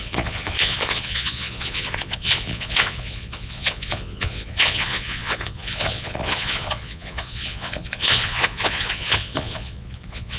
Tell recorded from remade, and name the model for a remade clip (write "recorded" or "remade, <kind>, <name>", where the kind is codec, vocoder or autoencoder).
remade, vocoder, Vocos